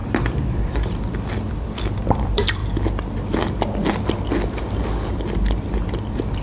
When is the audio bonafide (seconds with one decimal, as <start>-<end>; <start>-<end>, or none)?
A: 2.6-5.9